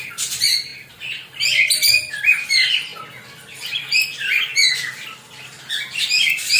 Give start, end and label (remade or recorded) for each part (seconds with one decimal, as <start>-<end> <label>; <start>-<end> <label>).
0.0-2.9 remade; 2.9-3.6 recorded; 3.6-4.5 remade; 4.5-5.7 recorded; 5.7-6.6 remade